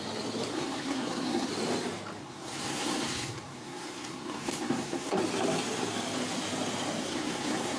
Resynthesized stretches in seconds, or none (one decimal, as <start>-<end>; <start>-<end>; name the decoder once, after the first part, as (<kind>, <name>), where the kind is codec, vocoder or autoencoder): 0.5-1.5 (codec, SNAC); 2.2-5.2; 7.0-7.8